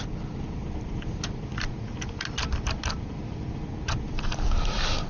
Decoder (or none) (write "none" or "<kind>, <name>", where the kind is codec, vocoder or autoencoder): none